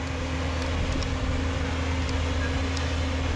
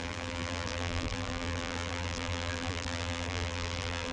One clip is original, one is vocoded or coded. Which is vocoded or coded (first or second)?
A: second